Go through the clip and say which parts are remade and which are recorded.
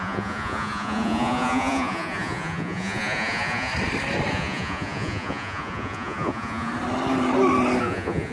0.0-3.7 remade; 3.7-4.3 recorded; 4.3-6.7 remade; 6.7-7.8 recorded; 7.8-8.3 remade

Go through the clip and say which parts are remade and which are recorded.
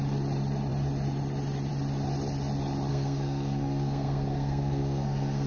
0.0-2.9 recorded; 2.9-5.5 remade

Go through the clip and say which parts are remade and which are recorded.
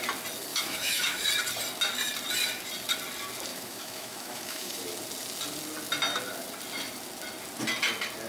0.0-0.5 recorded; 0.5-1.3 remade; 1.3-3.5 recorded; 3.5-4.8 remade; 4.8-8.3 recorded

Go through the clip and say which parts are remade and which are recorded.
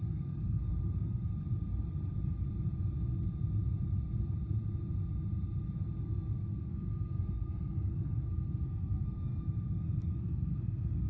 0.0-1.3 remade; 1.3-6.0 recorded; 6.0-11.1 remade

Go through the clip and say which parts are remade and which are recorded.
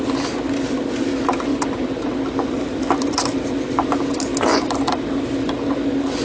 0.0-1.5 recorded; 1.5-4.1 remade; 4.1-4.5 recorded; 4.5-5.1 remade; 5.1-6.2 recorded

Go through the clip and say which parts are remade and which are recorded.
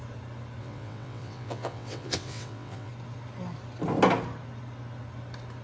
0.0-0.6 recorded; 0.6-2.9 remade; 2.9-5.6 recorded